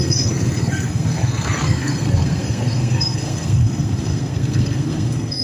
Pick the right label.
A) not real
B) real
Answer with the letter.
A